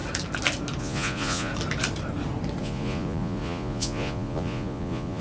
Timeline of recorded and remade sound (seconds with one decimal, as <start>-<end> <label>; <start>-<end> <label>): 0.0-0.8 recorded; 0.8-1.5 remade; 1.5-2.6 recorded; 2.6-5.2 remade